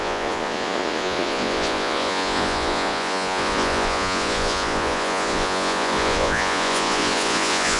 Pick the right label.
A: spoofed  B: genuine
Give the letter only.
A